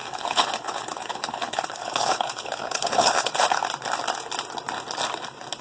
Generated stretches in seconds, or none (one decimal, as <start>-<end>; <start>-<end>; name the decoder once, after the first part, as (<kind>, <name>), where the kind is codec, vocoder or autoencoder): 0.0-3.6 (codec, HILCodec)